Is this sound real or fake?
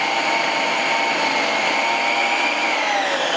real